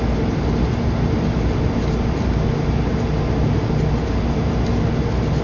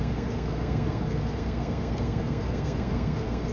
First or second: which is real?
first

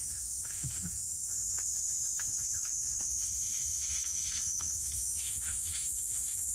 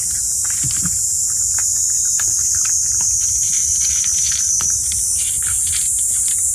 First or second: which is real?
second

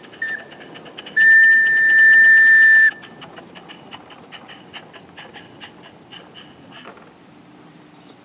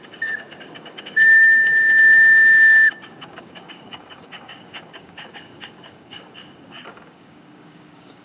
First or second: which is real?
first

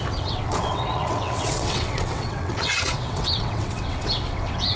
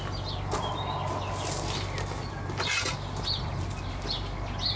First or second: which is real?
second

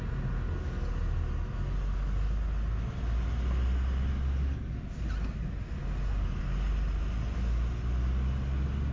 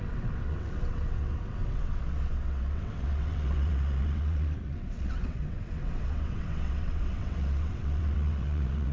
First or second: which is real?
first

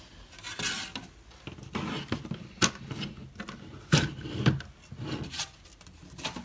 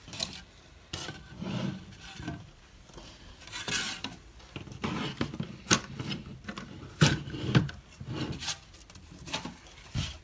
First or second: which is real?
first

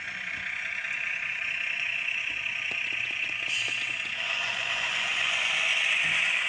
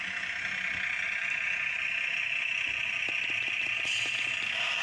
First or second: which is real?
second